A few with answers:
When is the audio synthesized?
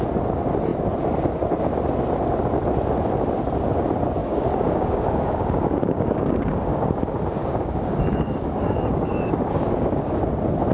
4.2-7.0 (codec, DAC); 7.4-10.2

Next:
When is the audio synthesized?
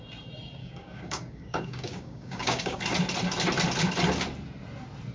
0.6-2.8 (codec, DAC)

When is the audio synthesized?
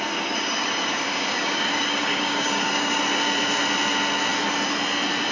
0.0-3.0 (codec, DAC)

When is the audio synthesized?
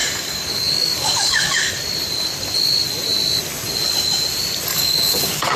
0.0-1.7 (codec, DAC); 4.7-5.6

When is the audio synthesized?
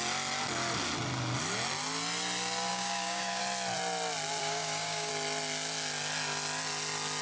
2.7-3.4 (codec, DAC); 4.4-5.1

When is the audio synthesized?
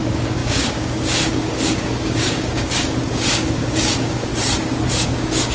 0.0-4.3 (codec, DAC); 4.9-5.5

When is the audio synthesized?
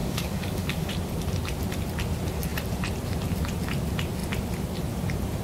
0.0-0.9 (codec, DAC)